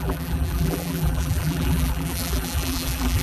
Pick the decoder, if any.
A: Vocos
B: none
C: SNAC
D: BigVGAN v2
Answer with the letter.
D